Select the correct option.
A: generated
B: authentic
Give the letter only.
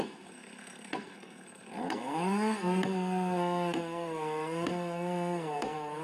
A